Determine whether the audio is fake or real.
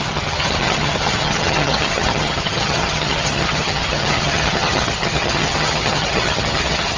fake